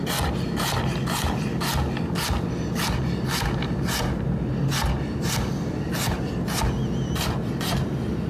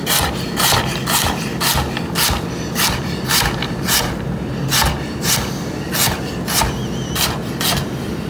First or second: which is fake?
second